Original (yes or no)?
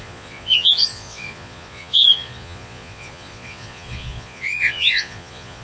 no